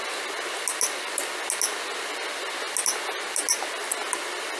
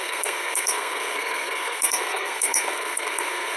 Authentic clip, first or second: first